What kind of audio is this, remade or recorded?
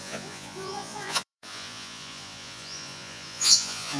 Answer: remade